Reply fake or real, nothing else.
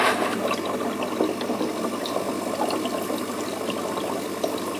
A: real